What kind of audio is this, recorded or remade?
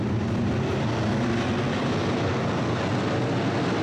recorded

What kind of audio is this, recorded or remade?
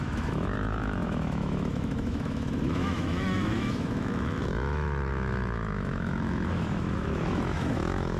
remade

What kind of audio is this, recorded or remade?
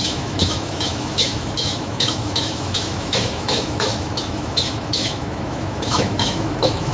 remade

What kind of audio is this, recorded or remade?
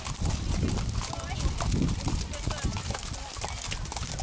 recorded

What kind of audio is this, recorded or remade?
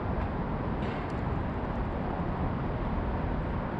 recorded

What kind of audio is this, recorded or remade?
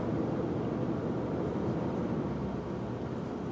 recorded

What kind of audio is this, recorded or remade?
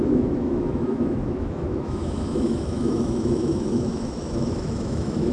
remade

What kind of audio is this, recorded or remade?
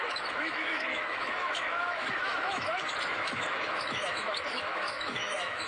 remade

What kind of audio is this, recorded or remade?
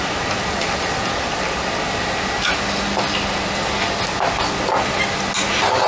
recorded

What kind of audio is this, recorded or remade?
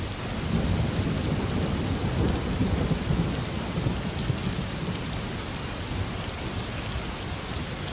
recorded